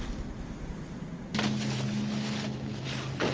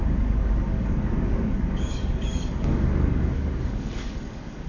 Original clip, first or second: first